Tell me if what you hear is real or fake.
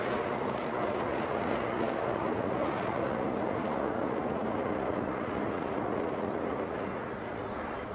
fake